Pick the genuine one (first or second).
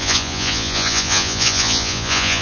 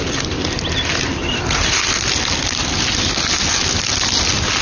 second